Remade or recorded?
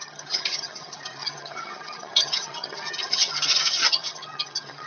remade